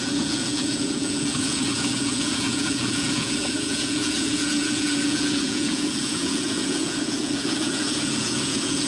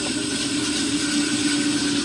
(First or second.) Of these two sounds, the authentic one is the second